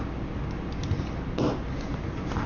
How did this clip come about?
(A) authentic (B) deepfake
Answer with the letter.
A